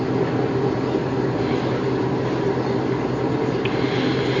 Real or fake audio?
real